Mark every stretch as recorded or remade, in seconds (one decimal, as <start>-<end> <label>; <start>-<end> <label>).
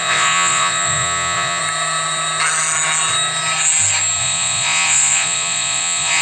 0.0-1.6 remade; 1.6-4.2 recorded; 4.2-6.2 remade